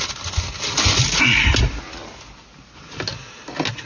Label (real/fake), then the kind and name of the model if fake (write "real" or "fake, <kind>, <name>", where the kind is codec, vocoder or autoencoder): real